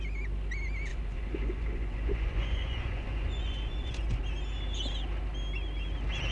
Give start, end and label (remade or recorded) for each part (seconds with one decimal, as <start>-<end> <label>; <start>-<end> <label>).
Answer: 0.0-0.9 recorded; 0.9-4.2 remade; 4.2-6.3 recorded